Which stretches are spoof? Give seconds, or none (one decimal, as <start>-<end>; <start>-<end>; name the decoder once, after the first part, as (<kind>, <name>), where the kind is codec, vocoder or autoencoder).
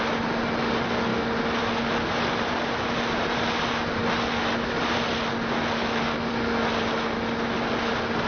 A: none